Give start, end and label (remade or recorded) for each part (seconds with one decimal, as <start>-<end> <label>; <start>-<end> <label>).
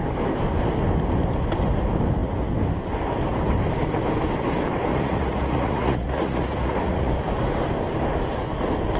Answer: 0.0-4.9 recorded; 4.9-7.1 remade; 7.1-9.0 recorded